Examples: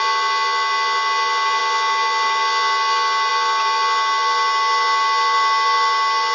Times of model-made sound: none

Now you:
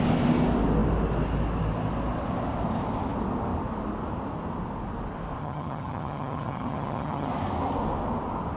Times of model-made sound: 5.4-7.3

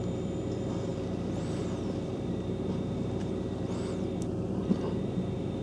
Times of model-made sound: 0.0-5.6

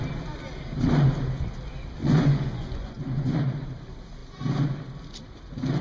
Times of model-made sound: 2.0-3.4